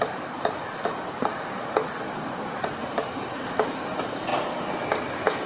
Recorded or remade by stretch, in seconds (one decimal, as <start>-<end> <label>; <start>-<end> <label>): 0.0-5.5 remade